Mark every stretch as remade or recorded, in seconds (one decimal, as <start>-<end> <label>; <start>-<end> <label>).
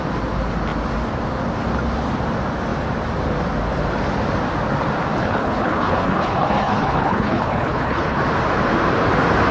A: 0.0-5.2 recorded; 5.2-8.2 remade; 8.2-9.5 recorded